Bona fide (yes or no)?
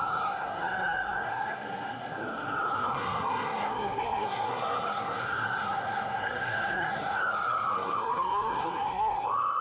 no